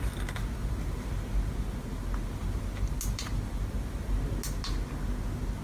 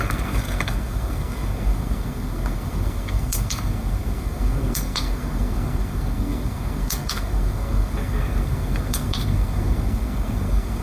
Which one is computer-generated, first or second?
second